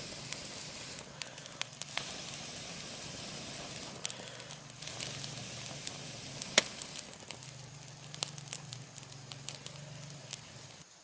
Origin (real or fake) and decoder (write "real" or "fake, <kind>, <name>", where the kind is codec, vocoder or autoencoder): real